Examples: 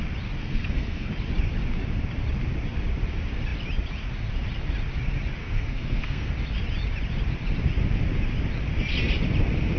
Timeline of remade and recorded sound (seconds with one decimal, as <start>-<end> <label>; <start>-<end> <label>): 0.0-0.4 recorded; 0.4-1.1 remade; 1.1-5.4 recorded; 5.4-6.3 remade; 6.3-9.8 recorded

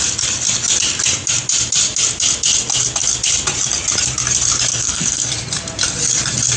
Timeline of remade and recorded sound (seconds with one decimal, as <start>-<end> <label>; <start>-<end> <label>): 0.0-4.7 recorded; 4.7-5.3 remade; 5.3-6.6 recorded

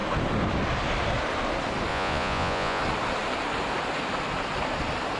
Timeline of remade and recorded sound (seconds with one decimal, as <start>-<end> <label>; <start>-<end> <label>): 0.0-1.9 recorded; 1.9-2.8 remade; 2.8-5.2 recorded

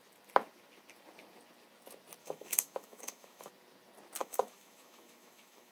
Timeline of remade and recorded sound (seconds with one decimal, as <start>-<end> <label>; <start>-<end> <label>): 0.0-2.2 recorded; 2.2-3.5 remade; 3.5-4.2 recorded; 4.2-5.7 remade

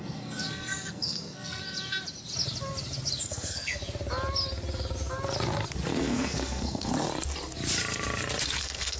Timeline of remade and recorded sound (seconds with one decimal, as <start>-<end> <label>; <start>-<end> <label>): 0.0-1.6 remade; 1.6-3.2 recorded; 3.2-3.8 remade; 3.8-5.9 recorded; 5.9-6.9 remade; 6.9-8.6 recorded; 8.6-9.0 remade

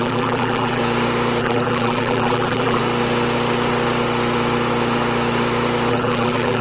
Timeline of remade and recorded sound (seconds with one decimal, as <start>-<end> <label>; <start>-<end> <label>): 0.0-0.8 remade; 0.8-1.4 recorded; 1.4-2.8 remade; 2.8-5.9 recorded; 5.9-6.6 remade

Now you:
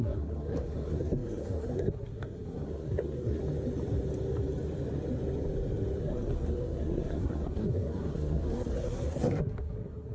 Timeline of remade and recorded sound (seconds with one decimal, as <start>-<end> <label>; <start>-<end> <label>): 0.0-3.4 remade; 3.4-6.0 recorded; 6.0-10.1 remade

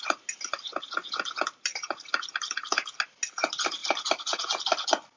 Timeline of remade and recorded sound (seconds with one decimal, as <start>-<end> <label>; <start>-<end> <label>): 0.0-3.8 recorded; 3.8-4.6 remade; 4.6-5.2 recorded